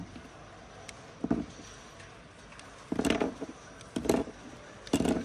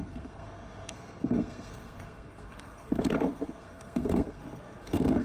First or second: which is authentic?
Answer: first